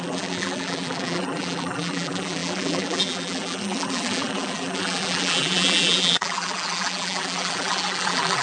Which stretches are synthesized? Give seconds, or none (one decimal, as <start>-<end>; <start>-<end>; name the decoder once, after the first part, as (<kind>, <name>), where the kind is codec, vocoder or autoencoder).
0.0-8.4 (vocoder, BigVGAN v2)